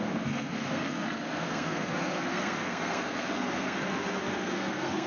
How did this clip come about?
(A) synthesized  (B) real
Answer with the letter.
A